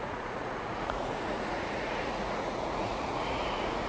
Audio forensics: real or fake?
fake